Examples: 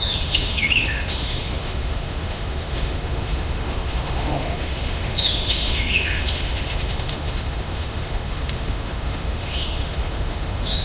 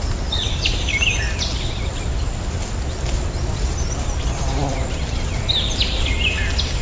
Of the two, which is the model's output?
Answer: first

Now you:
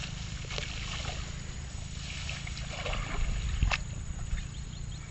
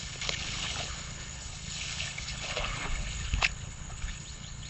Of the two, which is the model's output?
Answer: second